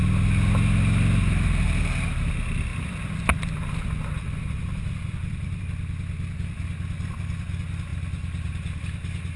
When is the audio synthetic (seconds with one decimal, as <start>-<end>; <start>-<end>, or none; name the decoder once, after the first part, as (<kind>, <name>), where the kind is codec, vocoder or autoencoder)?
2.7-5.6 (vocoder, BigVGAN v2)